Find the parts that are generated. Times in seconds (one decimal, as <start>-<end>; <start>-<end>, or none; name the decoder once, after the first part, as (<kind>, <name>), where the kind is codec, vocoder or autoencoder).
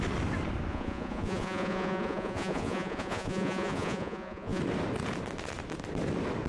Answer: 0.7-4.6 (vocoder, Vocos)